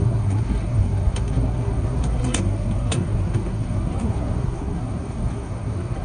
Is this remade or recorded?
remade